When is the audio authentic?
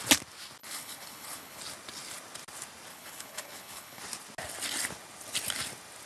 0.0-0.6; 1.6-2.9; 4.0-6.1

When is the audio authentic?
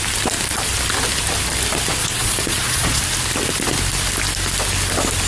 0.0-2.0; 3.0-5.3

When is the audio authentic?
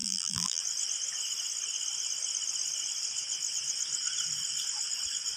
0.6-5.4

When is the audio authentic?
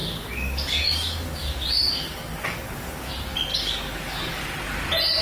3.1-3.5; 4.4-5.2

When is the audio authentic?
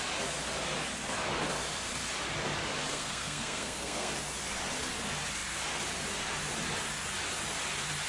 0.0-2.9; 4.1-8.1